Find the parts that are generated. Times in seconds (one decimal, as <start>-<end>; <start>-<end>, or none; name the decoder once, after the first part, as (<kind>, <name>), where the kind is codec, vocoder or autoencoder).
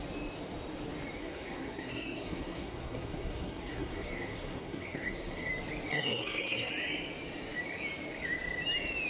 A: 1.2-5.5 (codec, SNAC); 5.9-6.7